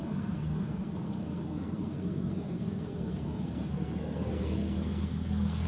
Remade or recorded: remade